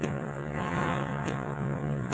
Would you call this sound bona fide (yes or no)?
no